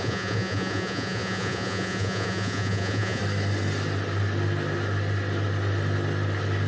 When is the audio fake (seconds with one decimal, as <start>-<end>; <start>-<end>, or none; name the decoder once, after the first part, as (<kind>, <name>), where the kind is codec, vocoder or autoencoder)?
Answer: 0.0-3.2 (vocoder, Vocos)